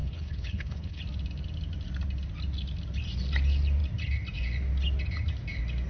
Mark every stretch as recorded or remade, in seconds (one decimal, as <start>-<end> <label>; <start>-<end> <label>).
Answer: 0.0-1.0 remade; 1.0-5.9 recorded